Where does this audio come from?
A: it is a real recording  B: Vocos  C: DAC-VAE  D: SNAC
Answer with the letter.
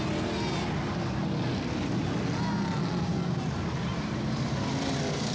A